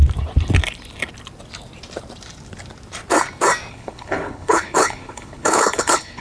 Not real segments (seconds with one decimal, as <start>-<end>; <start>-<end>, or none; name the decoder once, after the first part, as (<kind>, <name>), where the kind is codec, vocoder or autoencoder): 3.7-6.2 (codec, HILCodec)